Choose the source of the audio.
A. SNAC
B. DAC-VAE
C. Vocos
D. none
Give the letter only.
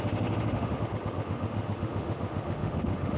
B